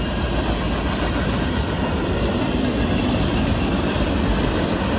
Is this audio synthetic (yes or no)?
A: no